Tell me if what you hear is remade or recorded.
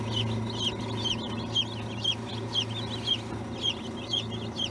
recorded